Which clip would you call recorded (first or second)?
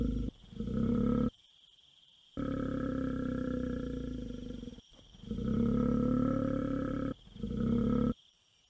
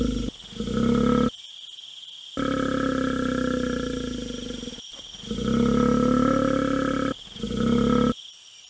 second